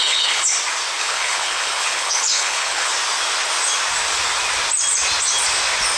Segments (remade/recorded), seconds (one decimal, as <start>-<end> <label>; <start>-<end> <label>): 0.0-0.5 remade; 0.5-1.0 recorded; 1.0-2.9 remade; 2.9-6.0 recorded